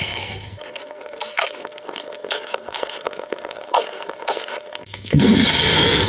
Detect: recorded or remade remade